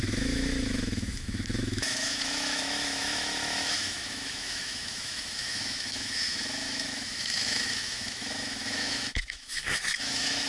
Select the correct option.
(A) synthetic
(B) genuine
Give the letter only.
A